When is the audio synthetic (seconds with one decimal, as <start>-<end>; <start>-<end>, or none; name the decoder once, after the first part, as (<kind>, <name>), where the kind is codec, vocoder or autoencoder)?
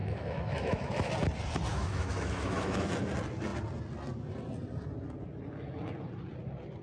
0.0-1.1 (autoencoder, DAC-VAE); 1.7-2.9